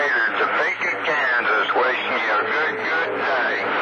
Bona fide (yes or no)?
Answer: yes